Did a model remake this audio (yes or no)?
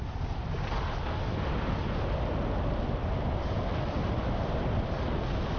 no